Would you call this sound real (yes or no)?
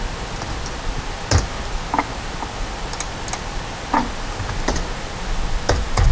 yes